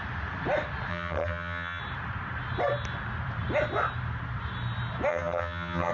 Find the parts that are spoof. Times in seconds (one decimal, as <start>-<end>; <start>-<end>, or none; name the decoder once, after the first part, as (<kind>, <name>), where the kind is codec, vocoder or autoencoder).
0.9-1.8 (vocoder, HiFi-GAN); 5.1-5.9